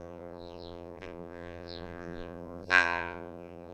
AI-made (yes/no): yes